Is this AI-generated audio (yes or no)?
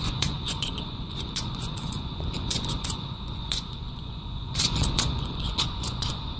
yes